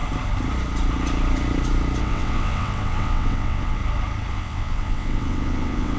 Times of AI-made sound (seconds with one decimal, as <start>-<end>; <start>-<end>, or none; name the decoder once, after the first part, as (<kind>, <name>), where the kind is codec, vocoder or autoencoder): 2.0-3.8 (vocoder, WaveNeXt); 4.3-6.0